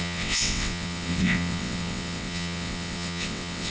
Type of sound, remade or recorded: remade